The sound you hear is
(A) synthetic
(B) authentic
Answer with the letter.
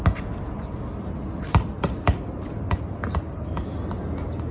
B